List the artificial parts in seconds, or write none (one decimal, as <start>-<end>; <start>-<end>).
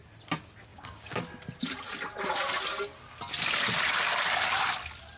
0.7-1.2